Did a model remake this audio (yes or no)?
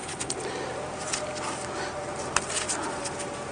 no